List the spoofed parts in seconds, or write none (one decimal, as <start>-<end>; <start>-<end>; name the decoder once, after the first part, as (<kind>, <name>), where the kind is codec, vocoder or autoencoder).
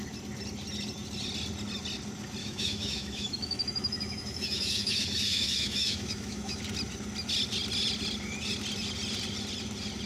2.4-6.6 (autoencoder, DAC-VAE)